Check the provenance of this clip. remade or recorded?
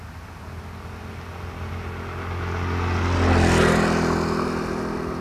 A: recorded